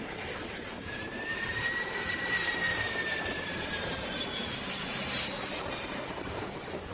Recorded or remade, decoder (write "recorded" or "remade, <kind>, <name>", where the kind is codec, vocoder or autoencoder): remade, vocoder, BigVGAN v2